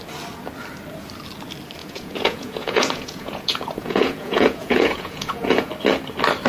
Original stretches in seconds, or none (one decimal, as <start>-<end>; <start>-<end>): 0.0-1.8; 5.7-6.5